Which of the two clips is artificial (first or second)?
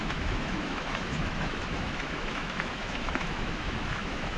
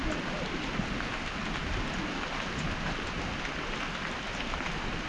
first